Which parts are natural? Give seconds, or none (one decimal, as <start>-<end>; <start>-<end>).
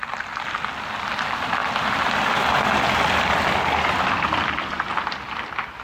0.0-5.8